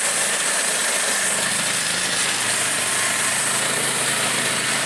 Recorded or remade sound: recorded